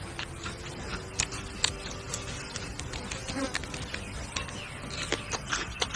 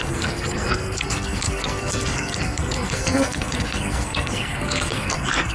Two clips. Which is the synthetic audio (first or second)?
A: second